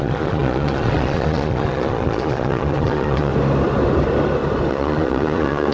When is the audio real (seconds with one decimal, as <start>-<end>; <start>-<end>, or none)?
3.3-4.7